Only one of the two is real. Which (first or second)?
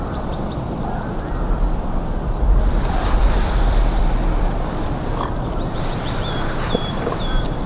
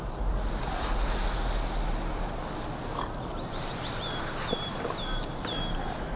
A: second